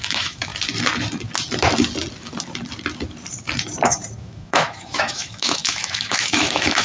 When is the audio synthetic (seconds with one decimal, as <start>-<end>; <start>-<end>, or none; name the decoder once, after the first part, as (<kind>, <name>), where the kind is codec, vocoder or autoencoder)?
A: 0.0-0.5 (autoencoder, DAC-VAE); 4.2-6.8